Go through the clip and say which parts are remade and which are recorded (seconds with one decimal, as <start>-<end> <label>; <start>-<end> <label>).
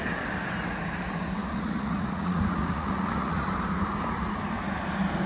0.0-1.5 recorded; 1.5-3.5 remade; 3.5-5.3 recorded